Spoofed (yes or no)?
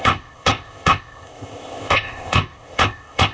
yes